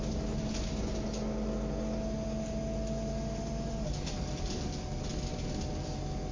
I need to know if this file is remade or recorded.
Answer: recorded